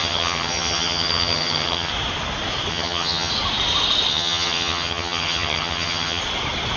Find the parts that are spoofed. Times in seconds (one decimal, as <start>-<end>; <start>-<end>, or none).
0.0-1.9; 2.7-3.3; 4.1-6.2